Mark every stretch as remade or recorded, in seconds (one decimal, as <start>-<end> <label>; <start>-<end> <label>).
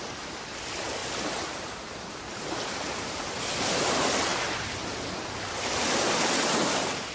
0.0-1.0 remade; 1.0-2.3 recorded; 2.3-4.3 remade; 4.3-7.1 recorded